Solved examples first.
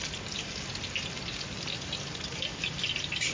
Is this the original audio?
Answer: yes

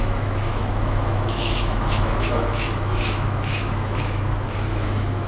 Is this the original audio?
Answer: no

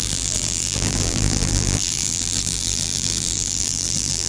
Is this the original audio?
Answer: no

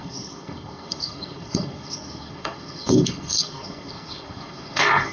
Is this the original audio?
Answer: no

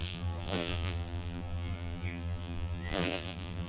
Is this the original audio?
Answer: no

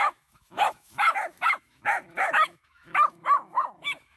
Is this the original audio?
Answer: no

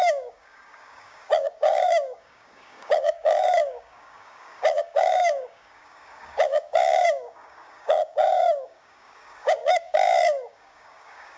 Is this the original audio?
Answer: no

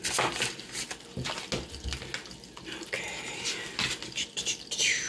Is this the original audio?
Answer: yes